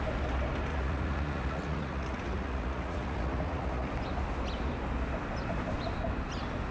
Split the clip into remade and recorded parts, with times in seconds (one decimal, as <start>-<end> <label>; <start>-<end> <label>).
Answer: 0.0-0.7 recorded; 0.7-3.9 remade; 3.9-6.7 recorded